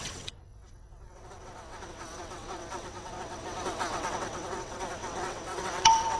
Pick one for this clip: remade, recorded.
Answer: remade